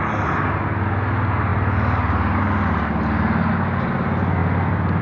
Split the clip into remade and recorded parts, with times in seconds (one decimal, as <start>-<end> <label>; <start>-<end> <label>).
0.0-4.4 recorded; 4.4-5.0 remade